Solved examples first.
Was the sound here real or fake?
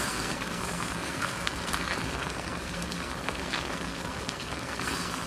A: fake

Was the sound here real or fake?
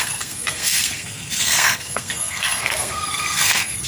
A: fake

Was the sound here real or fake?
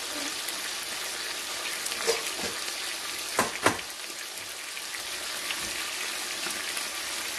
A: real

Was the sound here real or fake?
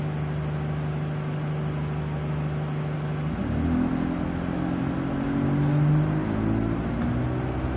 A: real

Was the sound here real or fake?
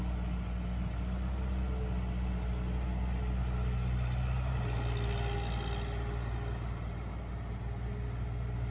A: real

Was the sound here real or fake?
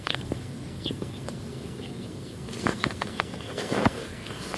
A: fake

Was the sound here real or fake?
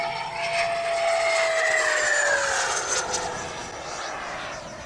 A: real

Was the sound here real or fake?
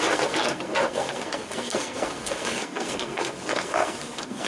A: fake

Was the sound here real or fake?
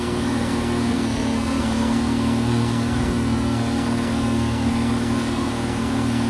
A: fake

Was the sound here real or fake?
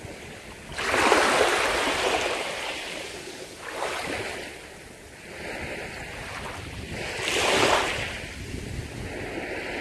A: real